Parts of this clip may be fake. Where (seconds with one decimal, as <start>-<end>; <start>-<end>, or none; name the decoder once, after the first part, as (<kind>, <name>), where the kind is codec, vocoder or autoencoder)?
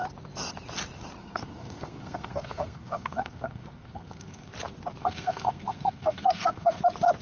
1.2-4.5 (codec, SNAC); 5.0-6.8